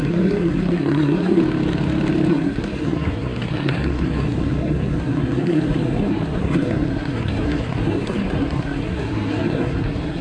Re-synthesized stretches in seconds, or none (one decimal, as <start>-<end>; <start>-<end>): 0.0-1.4; 2.3-10.2